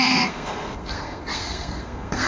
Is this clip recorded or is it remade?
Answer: remade